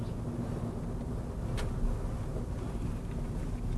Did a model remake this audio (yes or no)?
no